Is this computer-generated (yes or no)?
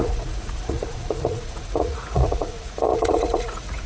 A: yes